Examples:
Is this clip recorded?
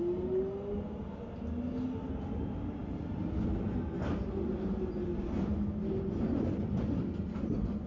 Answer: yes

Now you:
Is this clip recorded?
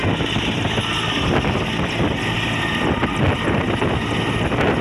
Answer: yes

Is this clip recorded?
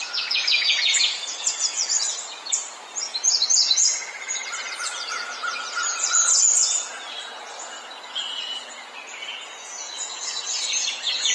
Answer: no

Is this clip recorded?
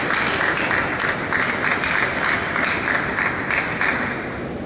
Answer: yes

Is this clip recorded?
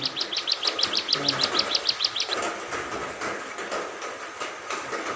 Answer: yes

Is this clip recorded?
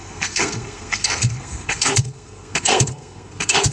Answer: no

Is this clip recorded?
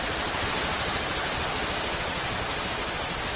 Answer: yes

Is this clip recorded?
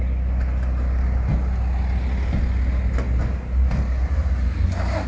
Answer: yes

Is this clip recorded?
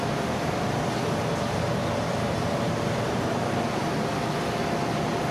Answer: yes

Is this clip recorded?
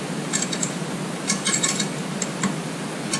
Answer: yes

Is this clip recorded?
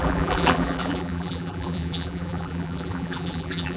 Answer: no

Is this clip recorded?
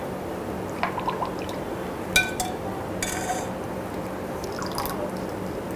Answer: yes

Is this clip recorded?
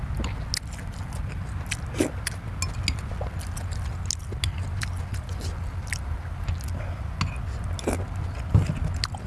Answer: yes